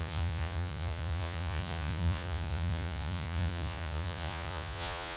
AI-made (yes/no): yes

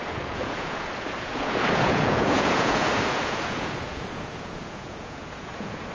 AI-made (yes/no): yes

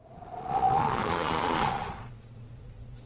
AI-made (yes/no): yes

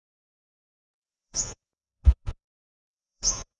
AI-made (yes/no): yes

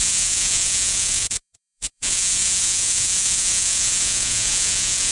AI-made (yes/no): yes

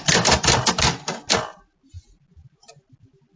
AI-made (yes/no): no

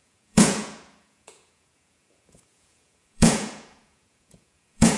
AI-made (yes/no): yes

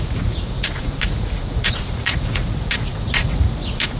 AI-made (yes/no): yes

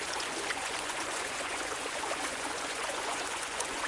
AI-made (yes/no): yes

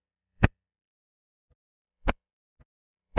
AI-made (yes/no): yes